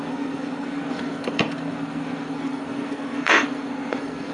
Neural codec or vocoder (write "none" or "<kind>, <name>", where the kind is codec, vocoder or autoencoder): codec, SNAC